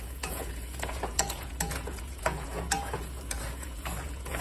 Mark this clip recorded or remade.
remade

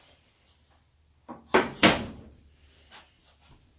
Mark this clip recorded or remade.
recorded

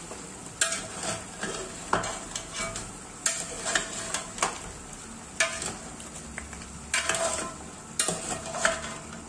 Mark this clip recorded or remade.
recorded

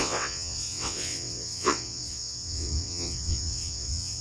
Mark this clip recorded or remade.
remade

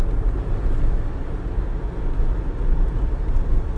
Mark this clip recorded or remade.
recorded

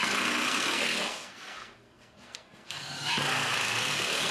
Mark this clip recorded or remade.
remade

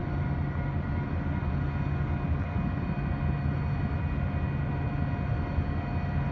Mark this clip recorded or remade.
recorded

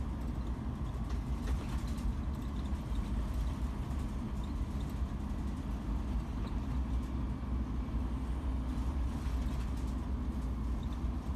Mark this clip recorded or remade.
recorded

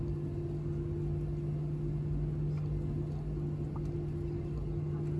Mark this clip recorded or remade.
recorded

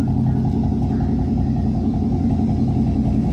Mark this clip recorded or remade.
recorded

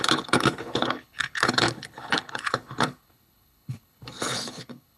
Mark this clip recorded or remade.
remade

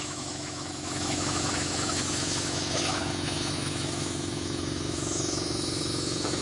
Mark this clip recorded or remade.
remade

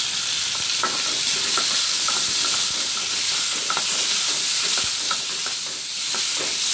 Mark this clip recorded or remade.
remade